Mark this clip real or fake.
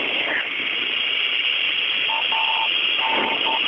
real